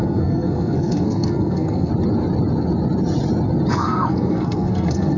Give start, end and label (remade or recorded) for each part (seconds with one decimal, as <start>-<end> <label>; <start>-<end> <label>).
0.0-1.9 remade; 1.9-3.7 recorded; 3.7-5.2 remade